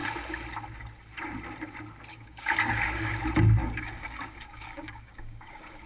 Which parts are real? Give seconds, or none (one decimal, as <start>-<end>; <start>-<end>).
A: 0.0-2.1; 3.2-3.6